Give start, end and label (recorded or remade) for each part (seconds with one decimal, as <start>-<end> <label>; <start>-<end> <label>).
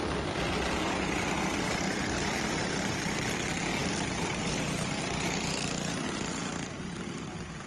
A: 0.0-3.8 recorded; 3.8-5.0 remade; 5.0-7.7 recorded